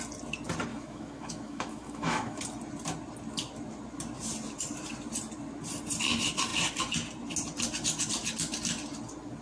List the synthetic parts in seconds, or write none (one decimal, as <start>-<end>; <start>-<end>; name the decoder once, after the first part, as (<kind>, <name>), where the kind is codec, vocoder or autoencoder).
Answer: 0.7-2.4 (autoencoder, DAC-VAE)

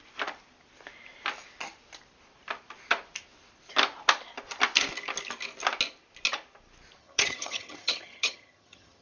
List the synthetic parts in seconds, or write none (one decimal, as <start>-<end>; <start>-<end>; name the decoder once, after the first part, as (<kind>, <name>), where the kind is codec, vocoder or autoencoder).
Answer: 7.0-9.0 (vocoder, HiFi-GAN)

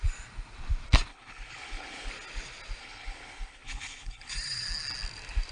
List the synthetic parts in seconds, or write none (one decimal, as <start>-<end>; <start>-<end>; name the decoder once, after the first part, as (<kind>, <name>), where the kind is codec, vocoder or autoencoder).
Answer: 1.1-2.1 (codec, HILCodec); 2.8-4.3